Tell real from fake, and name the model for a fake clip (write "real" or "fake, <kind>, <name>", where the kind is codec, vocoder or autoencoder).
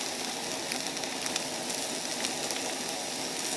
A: real